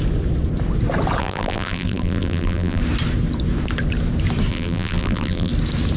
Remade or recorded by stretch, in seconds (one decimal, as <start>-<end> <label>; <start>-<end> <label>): 0.0-1.2 recorded; 1.2-2.8 remade; 2.8-4.5 recorded; 4.5-5.5 remade; 5.5-6.0 recorded